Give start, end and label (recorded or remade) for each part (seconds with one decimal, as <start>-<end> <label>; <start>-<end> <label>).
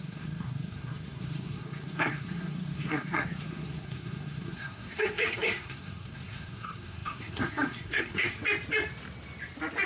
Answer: 0.0-8.4 remade; 8.4-9.9 recorded